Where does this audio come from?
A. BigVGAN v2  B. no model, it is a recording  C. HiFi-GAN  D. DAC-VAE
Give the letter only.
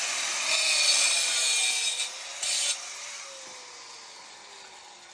B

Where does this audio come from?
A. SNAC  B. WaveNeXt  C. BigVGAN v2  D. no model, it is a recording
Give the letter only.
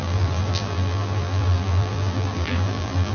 C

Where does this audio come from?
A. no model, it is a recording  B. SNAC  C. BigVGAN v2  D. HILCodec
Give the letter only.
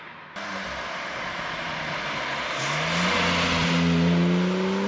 A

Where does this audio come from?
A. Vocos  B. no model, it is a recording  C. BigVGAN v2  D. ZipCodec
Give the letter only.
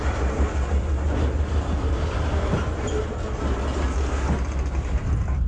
B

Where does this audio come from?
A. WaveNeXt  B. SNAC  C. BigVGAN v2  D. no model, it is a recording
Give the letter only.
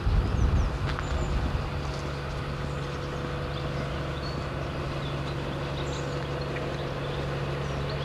D